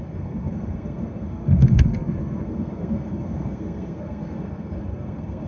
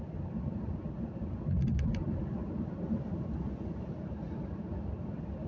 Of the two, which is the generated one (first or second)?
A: first